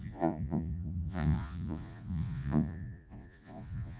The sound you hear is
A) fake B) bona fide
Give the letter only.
A